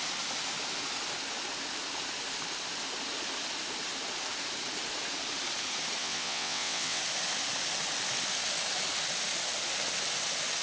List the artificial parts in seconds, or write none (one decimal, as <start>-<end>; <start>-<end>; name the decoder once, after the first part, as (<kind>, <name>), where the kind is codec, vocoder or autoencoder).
6.0-7.0 (vocoder, WaveNeXt)